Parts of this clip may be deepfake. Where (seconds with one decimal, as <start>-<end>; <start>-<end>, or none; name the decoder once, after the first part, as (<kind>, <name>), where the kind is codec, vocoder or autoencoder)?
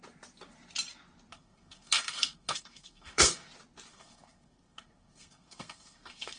1.3-3.5 (codec, SNAC); 3.9-6.4